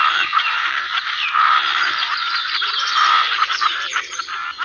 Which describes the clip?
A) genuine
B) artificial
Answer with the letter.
B